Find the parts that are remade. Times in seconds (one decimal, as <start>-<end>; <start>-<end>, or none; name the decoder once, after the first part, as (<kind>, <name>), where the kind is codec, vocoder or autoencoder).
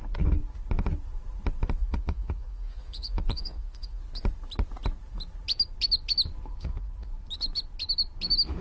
1.8-4.0 (vocoder, Vocos); 6.5-7.1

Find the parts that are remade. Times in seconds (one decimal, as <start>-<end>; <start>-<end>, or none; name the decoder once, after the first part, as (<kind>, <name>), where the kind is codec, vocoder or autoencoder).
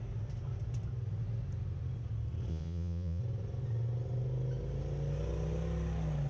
2.5-3.2 (vocoder, Vocos)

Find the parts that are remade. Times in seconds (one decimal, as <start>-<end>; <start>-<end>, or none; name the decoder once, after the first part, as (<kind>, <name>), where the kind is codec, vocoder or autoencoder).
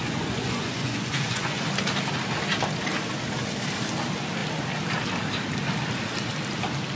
0.0-1.7 (vocoder, Vocos)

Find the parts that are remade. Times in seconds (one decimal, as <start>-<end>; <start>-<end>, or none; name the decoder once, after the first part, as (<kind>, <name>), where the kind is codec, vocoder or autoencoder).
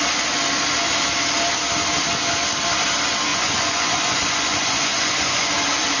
3.3-5.5 (vocoder, Vocos)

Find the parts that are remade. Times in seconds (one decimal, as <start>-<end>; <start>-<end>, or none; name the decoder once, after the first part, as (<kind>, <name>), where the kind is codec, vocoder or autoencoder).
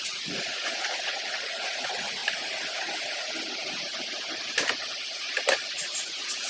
0.0-2.2 (vocoder, Vocos); 5.7-6.5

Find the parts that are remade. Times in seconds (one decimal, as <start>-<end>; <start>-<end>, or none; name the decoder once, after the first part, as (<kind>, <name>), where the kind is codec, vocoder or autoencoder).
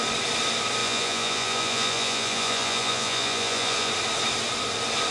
0.8-3.9 (vocoder, Vocos)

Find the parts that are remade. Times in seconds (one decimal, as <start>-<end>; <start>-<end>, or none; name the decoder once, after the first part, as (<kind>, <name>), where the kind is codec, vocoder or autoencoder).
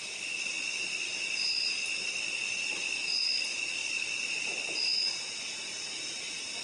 none